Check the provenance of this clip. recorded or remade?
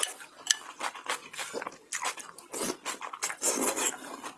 recorded